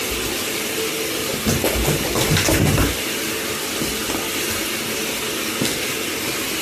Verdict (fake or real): real